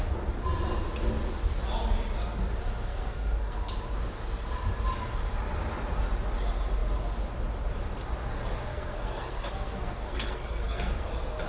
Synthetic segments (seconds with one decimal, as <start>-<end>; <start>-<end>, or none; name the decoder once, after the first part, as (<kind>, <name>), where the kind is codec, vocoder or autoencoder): 2.9-3.7 (codec, SNAC); 8.7-11.1

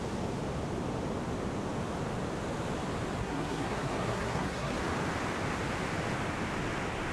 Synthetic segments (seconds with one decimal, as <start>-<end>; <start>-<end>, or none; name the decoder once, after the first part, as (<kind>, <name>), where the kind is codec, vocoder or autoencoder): 3.2-4.8 (codec, SNAC)

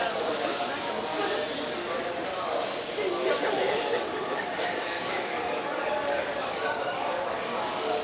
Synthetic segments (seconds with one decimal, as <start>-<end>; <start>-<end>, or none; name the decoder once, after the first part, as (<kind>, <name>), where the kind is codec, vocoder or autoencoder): 0.0-1.1 (codec, DAC); 3.5-8.0

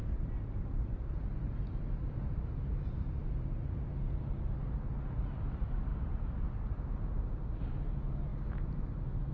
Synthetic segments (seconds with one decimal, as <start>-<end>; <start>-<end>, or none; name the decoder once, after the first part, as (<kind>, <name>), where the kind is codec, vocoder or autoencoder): 0.0-3.7 (vocoder, BigVGAN v2); 5.9-6.9; 8.3-9.3

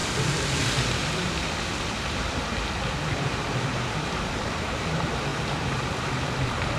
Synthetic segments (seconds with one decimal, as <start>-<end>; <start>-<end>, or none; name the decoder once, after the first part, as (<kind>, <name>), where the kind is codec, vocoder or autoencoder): 0.6-1.0 (vocoder, BigVGAN v2); 1.8-2.3; 3.1-6.8

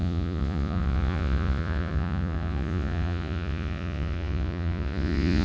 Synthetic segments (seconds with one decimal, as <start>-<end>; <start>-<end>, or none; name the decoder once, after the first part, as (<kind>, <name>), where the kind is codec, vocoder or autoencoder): 0.0-5.4 (vocoder, Vocos)

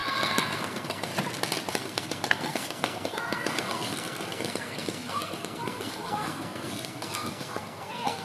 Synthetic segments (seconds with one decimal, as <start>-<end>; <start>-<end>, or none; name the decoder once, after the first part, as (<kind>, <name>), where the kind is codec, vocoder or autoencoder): 0.0-1.1 (codec, SNAC); 1.7-8.2

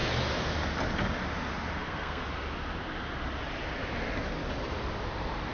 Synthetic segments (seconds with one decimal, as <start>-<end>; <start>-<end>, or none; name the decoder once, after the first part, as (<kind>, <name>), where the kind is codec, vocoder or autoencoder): 1.8-2.2 (codec, SNAC)